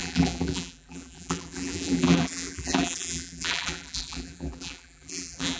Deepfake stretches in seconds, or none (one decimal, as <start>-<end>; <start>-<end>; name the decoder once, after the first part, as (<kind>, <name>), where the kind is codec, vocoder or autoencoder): 0.0-5.6 (vocoder, BigVGAN v2)